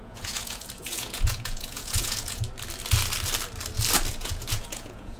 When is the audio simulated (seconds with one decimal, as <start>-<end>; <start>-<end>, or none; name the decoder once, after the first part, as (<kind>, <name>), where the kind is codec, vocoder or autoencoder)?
0.0-2.4 (vocoder, Vocos); 4.1-5.2